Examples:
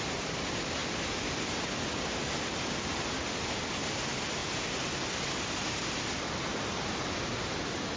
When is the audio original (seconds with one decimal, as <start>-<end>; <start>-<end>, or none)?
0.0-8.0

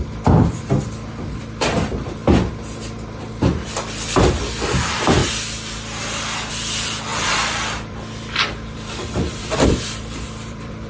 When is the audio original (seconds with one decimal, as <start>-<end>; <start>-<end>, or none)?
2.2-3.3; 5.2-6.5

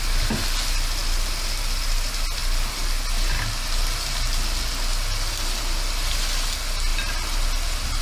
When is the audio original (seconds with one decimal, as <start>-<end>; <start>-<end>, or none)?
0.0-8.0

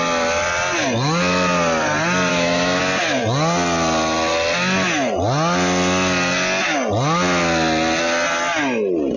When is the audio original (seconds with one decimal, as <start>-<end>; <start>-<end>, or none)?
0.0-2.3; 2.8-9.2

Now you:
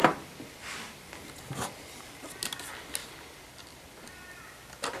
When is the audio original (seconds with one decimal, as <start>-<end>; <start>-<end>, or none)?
0.0-3.0; 4.1-5.0